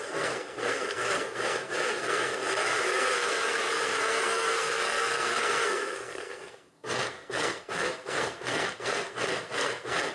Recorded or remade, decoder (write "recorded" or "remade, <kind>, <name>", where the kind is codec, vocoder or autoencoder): remade, codec, SNAC